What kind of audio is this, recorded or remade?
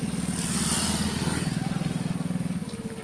recorded